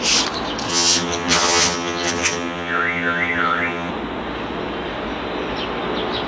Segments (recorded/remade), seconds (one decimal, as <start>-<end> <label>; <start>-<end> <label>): 0.0-0.7 recorded; 0.7-3.9 remade; 3.9-6.3 recorded